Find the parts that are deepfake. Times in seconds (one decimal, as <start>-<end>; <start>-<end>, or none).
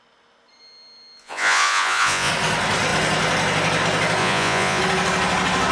1.2-2.3; 4.2-4.8